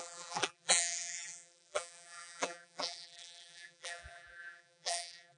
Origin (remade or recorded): remade